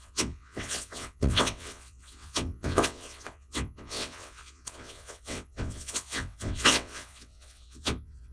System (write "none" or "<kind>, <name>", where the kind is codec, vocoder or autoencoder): vocoder, WaveNeXt